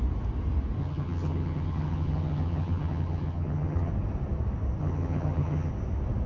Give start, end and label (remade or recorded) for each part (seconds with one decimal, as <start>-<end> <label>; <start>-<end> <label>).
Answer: 0.0-0.8 recorded; 0.8-3.9 remade; 3.9-4.8 recorded; 4.8-5.7 remade; 5.7-6.3 recorded